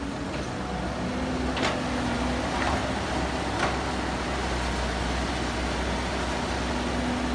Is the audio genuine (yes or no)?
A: yes